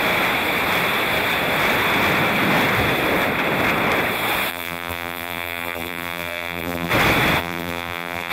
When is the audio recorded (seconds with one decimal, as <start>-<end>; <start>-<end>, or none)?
0.0-4.5; 6.9-7.4